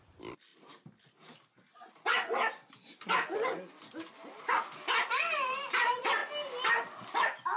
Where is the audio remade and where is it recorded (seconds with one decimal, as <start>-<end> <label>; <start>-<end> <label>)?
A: 0.0-0.5 remade; 0.5-5.1 recorded; 5.1-6.2 remade; 6.2-7.6 recorded

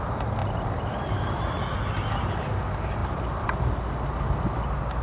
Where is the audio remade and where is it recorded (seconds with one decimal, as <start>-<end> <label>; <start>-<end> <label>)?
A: 0.0-0.4 recorded; 0.4-2.6 remade; 2.6-3.0 recorded; 3.0-3.7 remade; 3.7-5.0 recorded

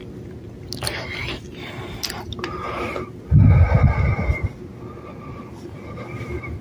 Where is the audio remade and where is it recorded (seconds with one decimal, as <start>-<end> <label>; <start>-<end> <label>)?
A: 0.0-6.6 recorded

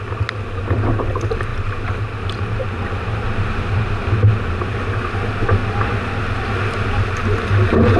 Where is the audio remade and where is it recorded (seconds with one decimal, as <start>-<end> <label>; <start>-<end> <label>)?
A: 0.0-8.0 recorded

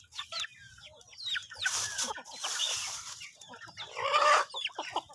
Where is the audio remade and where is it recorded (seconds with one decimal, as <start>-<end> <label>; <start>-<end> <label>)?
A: 0.0-1.4 recorded; 1.4-4.5 remade; 4.5-5.1 recorded

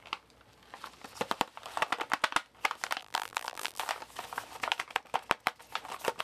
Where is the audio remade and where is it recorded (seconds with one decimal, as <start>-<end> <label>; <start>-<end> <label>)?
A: 0.0-3.0 recorded; 3.0-3.8 remade; 3.8-6.2 recorded